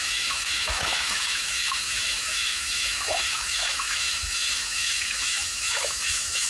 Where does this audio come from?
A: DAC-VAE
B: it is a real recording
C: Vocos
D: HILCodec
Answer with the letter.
A